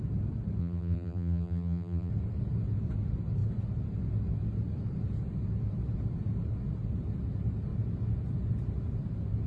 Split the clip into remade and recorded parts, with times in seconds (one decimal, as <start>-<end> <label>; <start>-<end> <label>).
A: 0.0-0.6 recorded; 0.6-2.1 remade; 2.1-9.5 recorded